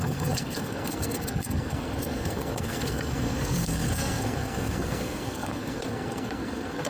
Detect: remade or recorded remade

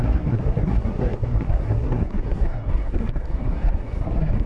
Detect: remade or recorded remade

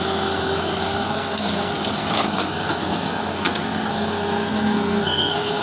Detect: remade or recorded remade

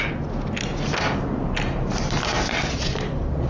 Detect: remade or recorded recorded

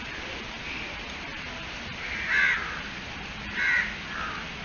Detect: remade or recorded recorded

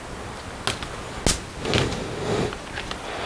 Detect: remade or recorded recorded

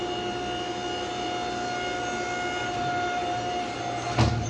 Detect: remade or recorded recorded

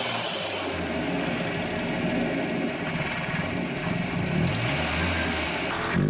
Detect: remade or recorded recorded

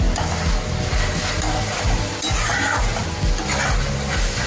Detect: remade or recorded recorded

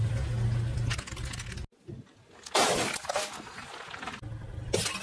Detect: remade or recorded recorded